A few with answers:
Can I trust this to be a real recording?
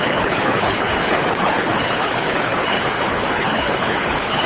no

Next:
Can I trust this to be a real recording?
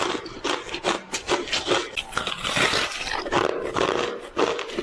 yes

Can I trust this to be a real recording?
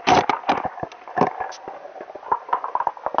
yes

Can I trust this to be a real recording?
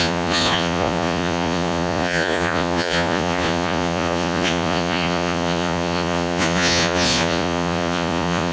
no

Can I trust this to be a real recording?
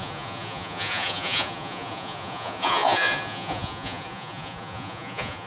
no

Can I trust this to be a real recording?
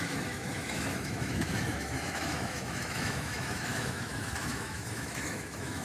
no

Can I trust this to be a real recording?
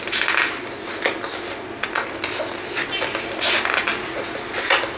yes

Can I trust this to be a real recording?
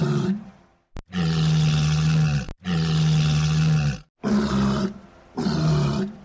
yes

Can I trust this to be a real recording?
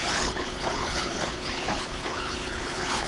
no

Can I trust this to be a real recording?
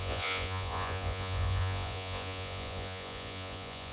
no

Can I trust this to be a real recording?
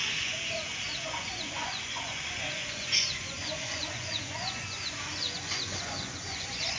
no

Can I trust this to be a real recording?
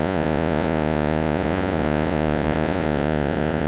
no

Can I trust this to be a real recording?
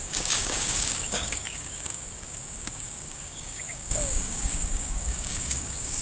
no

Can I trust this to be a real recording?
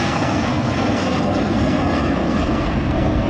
no